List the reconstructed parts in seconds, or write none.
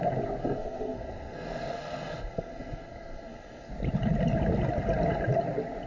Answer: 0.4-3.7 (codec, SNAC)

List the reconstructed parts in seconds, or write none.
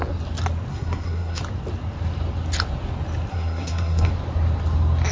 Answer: 0.7-1.4 (codec, SNAC); 3.3-4.1